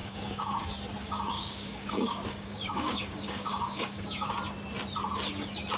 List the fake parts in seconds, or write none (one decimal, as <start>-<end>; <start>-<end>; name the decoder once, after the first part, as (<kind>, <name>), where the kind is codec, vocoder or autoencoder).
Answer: 0.0-0.6 (codec, DAC); 1.0-4.3